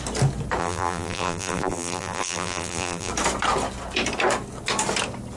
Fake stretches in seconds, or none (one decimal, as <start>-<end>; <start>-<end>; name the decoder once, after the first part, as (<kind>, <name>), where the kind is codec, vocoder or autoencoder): 0.6-3.1 (vocoder, BigVGAN v2)

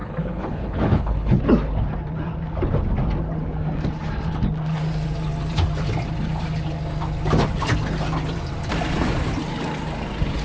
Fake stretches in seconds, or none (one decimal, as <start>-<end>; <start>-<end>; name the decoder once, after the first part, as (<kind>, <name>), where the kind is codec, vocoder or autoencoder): 0.0-1.4 (codec, HILCodec)

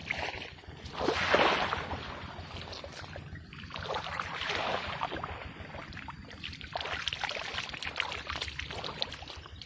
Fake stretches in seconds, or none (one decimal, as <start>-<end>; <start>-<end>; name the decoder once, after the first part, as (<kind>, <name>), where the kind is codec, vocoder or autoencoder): none

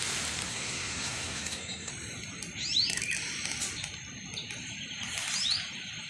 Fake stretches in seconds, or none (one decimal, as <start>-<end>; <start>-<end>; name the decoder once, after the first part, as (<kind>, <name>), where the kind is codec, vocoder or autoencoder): 0.5-1.9 (codec, SNAC)

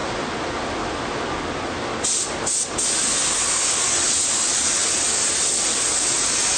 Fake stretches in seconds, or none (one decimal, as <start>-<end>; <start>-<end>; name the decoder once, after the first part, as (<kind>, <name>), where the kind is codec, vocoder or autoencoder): none

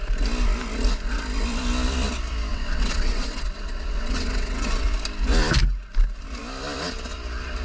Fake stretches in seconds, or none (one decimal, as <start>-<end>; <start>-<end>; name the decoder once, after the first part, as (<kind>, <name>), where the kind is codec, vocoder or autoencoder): 2.5-4.7 (vocoder, WaveNeXt)

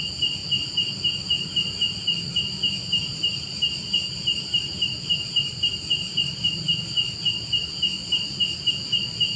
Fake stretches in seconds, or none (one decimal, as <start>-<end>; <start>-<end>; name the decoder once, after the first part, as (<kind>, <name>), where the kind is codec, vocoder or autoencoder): 2.8-6.5 (vocoder, BigVGAN v2)